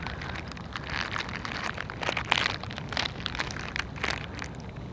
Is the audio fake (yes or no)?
no